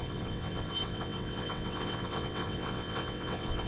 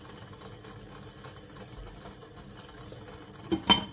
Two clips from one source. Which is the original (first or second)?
second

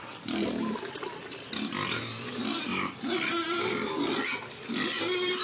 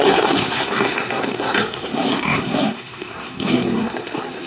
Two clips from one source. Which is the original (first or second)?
first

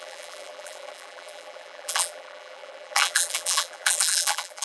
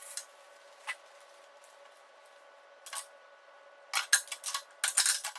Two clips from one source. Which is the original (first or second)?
second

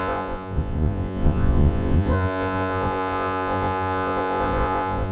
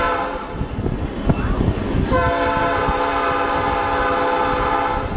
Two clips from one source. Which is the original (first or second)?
second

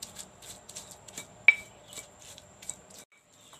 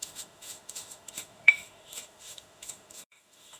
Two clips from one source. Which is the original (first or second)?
first